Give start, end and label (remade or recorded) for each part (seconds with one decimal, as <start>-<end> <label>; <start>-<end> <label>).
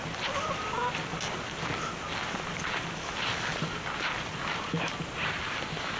0.0-6.0 recorded